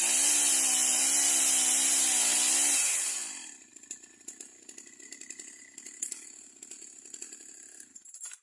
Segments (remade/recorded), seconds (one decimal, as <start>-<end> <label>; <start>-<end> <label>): 0.0-8.4 recorded